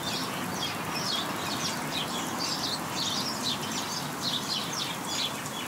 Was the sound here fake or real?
real